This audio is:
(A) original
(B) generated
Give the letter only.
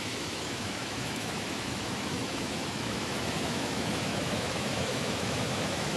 B